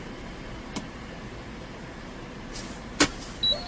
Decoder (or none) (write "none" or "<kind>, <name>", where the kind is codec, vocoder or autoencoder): none